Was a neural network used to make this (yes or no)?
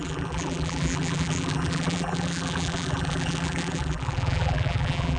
yes